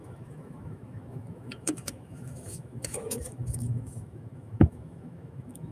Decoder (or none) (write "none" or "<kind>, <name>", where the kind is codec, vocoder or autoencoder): autoencoder, DAC-VAE